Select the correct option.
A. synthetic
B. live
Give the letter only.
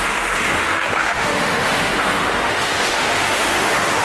A